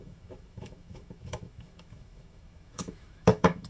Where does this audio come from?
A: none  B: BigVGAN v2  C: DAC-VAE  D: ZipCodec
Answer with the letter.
C